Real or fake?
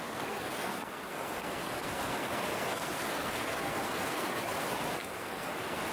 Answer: fake